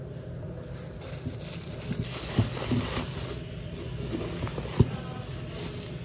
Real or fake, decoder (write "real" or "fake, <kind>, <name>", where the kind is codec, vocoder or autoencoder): real